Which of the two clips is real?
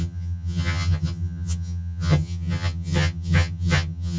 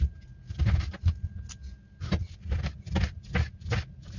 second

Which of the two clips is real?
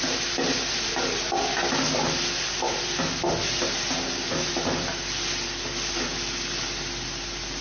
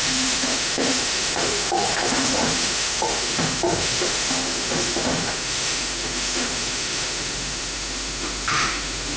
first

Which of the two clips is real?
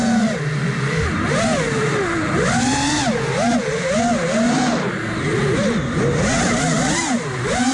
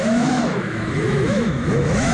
first